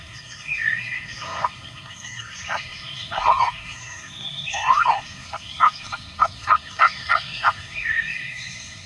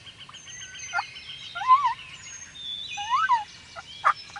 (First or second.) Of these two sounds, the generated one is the first